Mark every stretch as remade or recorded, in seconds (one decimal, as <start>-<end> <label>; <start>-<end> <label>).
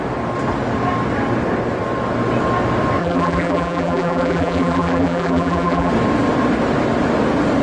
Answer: 0.0-3.0 recorded; 3.0-5.9 remade; 5.9-7.6 recorded